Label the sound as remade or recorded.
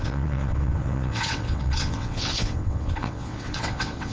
remade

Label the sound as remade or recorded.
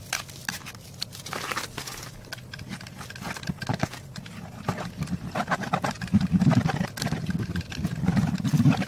recorded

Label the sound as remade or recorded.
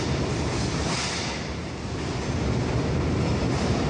recorded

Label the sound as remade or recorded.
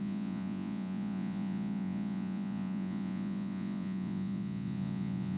remade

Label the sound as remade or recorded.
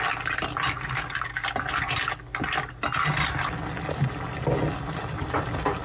recorded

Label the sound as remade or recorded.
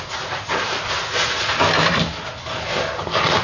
recorded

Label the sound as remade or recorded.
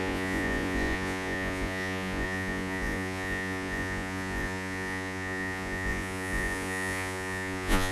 remade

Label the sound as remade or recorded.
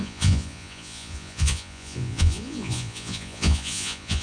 remade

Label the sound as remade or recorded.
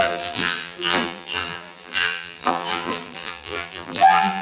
remade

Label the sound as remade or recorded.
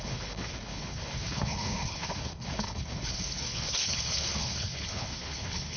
remade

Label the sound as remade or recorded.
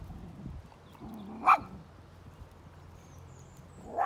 recorded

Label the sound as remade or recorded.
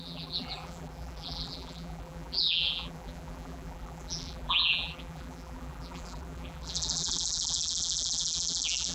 remade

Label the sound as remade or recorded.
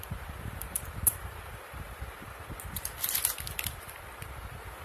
recorded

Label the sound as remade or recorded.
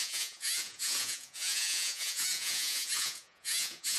remade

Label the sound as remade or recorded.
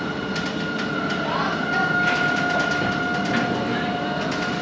recorded